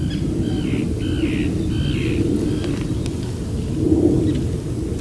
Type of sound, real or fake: real